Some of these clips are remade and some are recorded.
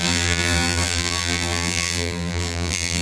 remade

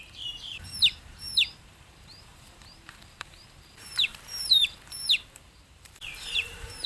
remade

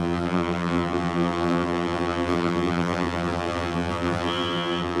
remade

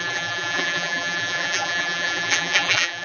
remade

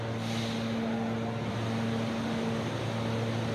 recorded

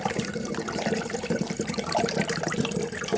remade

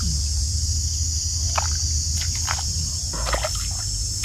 recorded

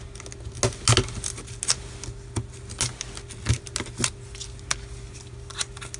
recorded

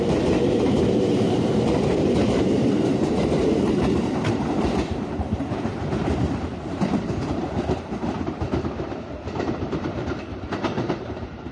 remade